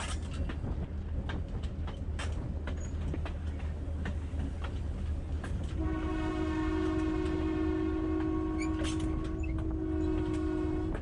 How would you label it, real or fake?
real